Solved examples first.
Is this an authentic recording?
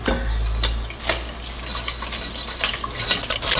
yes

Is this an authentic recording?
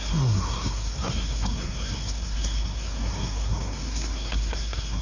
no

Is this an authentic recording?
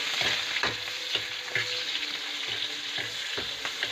yes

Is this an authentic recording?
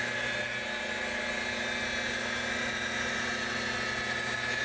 yes